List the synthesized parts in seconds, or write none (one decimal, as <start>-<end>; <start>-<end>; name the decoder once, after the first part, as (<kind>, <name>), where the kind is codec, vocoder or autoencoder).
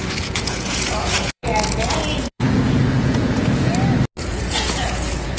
0.0-3.7 (vocoder, Vocos); 4.2-5.4